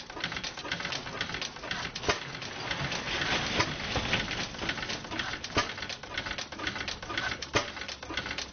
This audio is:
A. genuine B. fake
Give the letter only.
A